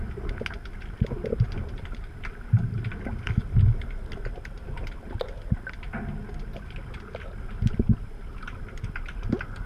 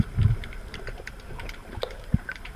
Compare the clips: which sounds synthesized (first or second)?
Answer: second